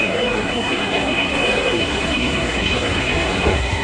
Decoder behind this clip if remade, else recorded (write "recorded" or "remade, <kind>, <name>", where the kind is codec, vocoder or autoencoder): remade, codec, SNAC